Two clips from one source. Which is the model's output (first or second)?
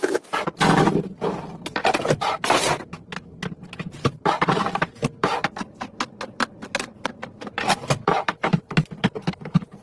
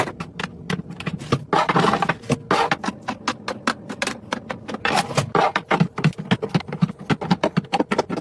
first